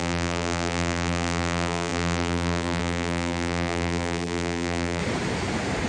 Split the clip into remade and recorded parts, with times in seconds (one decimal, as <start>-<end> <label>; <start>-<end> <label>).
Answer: 0.0-5.0 remade; 5.0-5.9 recorded